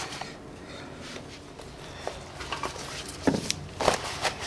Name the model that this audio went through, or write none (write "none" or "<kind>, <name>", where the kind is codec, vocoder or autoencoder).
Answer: none